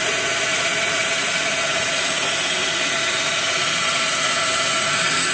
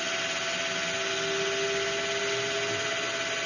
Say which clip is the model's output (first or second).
first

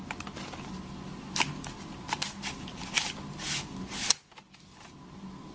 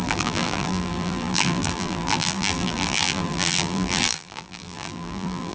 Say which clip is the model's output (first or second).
second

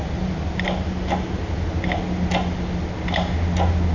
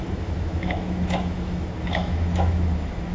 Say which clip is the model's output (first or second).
second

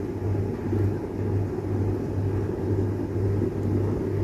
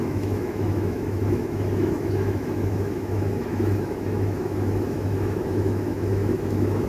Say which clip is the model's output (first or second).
second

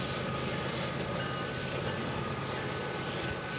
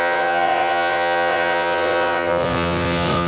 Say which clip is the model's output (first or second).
second